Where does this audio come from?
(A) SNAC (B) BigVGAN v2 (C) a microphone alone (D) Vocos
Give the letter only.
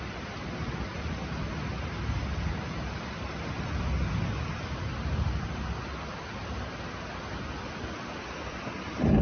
C